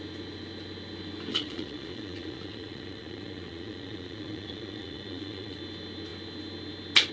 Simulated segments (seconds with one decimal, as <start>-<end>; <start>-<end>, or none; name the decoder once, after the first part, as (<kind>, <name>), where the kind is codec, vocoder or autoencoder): 1.3-5.6 (vocoder, Vocos)